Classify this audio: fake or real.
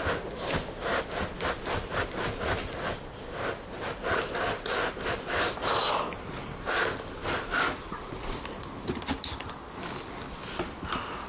real